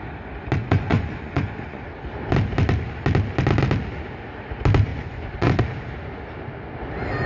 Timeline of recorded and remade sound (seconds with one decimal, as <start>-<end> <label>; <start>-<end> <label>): 0.0-0.6 recorded; 0.6-1.8 remade; 1.8-4.9 recorded; 4.9-5.6 remade; 5.6-7.3 recorded